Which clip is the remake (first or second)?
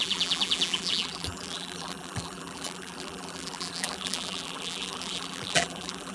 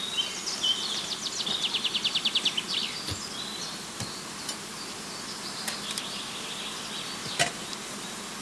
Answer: first